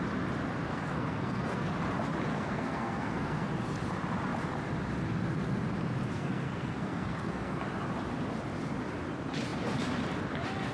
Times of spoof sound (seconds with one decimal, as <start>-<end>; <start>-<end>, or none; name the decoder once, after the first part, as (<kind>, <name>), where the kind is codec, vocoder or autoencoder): 0.7-1.7 (codec, SNAC); 2.3-3.5; 6.1-7.6